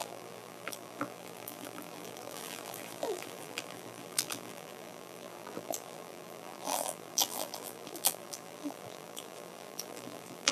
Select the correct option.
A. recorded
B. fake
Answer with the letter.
B